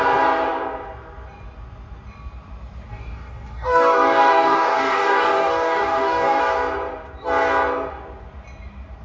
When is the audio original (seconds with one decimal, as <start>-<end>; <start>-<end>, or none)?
0.0-2.9; 6.4-9.0